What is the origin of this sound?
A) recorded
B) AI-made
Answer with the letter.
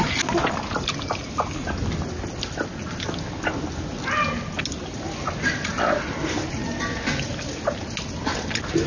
A